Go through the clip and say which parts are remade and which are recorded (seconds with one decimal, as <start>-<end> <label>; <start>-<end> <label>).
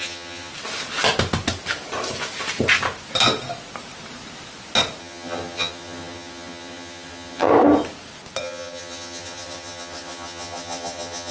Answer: 0.0-0.5 remade; 0.5-5.0 recorded; 5.0-7.5 remade; 7.5-8.4 recorded; 8.4-11.3 remade